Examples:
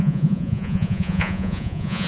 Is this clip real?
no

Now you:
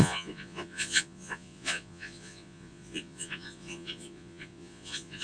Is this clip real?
no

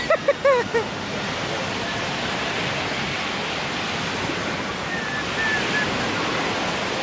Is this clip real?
yes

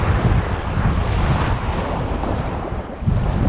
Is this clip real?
yes